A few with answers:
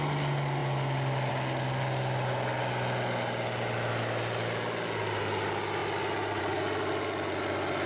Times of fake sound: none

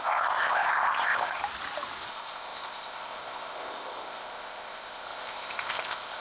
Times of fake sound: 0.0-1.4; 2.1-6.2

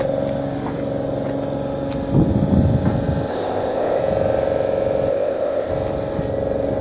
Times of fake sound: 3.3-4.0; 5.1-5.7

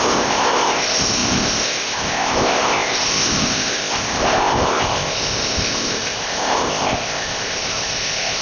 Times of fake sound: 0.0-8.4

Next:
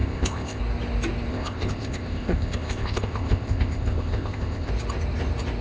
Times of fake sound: 0.0-0.6; 1.3-4.7

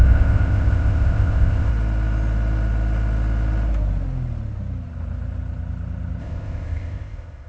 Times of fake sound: 0.0-1.7; 6.2-7.5

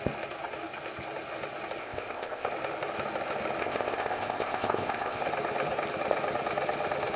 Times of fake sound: 1.8-2.5; 3.6-5.2

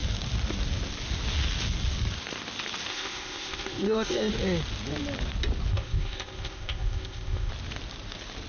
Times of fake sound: 2.9-4.3; 5.7-7.5